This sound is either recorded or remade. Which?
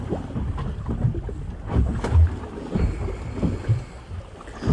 recorded